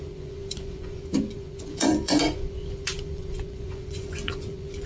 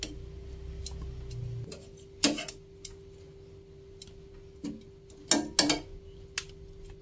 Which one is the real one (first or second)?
second